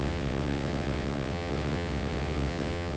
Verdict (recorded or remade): remade